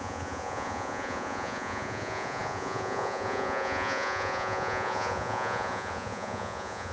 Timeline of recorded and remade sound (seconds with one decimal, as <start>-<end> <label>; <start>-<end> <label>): 0.0-6.9 remade